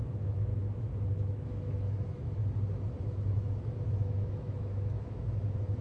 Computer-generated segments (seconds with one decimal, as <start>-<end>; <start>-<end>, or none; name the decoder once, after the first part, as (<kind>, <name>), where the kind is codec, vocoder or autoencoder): 0.0-2.4 (autoencoder, DAC-VAE); 3.0-5.8